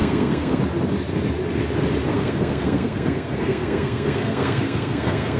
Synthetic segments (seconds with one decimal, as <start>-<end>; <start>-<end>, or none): 0.0-0.6; 2.1-5.4